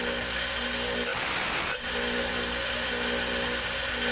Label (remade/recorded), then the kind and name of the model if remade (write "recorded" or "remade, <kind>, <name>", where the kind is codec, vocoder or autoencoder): recorded